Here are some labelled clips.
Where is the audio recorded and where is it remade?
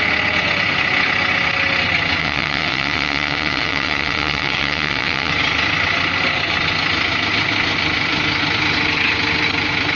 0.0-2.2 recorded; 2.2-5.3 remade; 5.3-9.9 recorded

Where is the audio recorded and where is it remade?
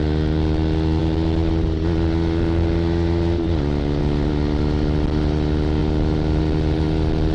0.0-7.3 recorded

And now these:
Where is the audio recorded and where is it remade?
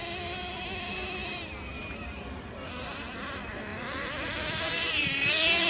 0.0-5.7 recorded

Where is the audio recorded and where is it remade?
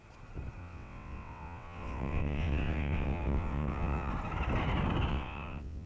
0.0-0.6 recorded; 0.6-4.1 remade; 4.1-5.1 recorded; 5.1-5.9 remade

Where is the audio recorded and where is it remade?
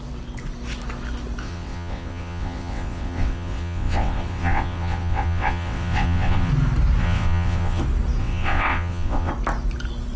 0.0-1.4 recorded; 1.4-6.5 remade; 6.5-7.0 recorded; 7.0-7.8 remade; 7.8-8.2 recorded; 8.2-9.3 remade; 9.3-10.2 recorded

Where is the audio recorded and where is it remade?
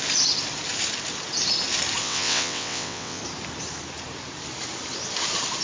0.0-2.0 recorded; 2.0-3.2 remade; 3.2-5.6 recorded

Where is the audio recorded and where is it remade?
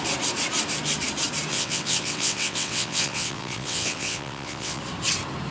0.0-1.5 recorded; 1.5-4.8 remade; 4.8-5.5 recorded